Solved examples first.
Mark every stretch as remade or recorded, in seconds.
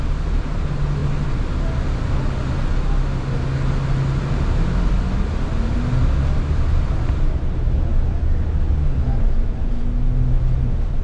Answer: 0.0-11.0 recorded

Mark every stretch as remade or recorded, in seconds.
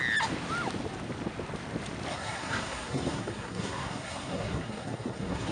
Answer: 0.0-2.1 recorded; 2.1-5.5 remade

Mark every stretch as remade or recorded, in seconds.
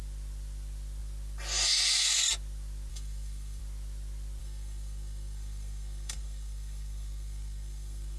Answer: 0.0-2.9 recorded; 2.9-3.6 remade; 3.6-4.4 recorded; 4.4-8.2 remade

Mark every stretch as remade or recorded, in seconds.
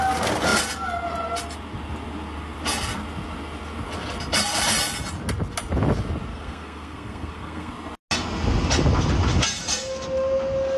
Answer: 0.0-6.3 recorded; 6.3-7.7 remade; 7.7-10.8 recorded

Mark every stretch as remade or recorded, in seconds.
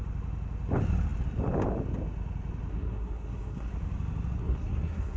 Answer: 0.0-2.7 recorded; 2.7-3.7 remade; 3.7-4.4 recorded; 4.4-5.2 remade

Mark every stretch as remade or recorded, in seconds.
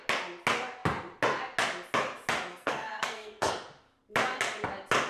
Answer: 0.0-2.5 recorded; 2.5-3.5 remade; 3.5-5.1 recorded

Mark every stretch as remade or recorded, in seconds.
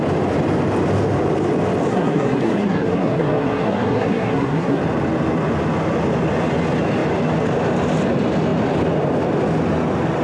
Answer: 0.0-1.9 recorded; 1.9-4.8 remade; 4.8-10.2 recorded